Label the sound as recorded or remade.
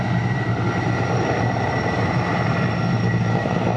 recorded